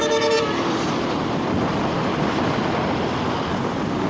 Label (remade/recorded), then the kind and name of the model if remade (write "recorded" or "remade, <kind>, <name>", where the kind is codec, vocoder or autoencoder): recorded